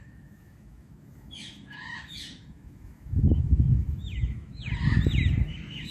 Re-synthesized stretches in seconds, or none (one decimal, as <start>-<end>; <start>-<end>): 0.0-4.7; 5.4-5.9